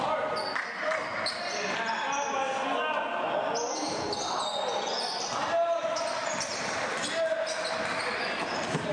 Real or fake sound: real